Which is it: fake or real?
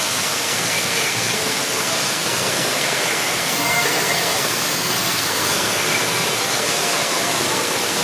fake